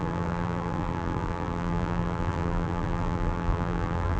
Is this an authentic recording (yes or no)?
no